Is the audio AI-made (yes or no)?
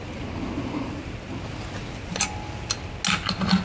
no